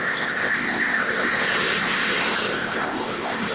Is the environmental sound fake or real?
fake